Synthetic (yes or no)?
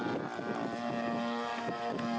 no